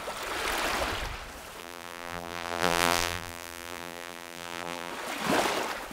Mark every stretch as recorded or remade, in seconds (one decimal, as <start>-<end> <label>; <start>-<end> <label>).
0.0-1.6 recorded; 1.6-4.9 remade; 4.9-5.9 recorded